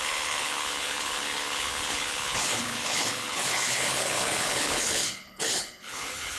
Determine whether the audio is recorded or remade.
remade